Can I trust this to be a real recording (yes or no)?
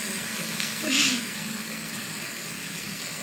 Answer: no